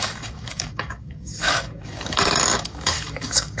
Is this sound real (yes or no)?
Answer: no